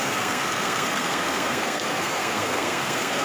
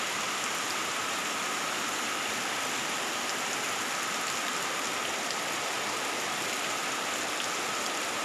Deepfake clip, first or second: first